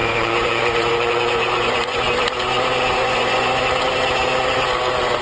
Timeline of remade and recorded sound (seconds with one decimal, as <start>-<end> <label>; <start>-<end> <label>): 0.0-2.0 remade; 2.0-3.0 recorded; 3.0-3.6 remade; 3.6-5.2 recorded